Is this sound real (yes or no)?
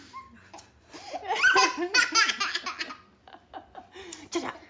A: yes